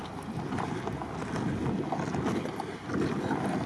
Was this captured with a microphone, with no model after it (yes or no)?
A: yes